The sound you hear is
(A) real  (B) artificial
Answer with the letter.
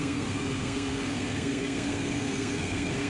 B